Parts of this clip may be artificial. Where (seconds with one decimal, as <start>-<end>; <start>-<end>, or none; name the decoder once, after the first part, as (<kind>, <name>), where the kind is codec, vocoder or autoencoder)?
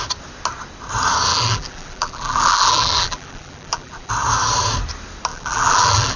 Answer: 1.3-4.1 (vocoder, BigVGAN v2); 5.3-6.2